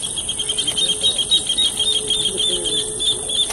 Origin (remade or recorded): recorded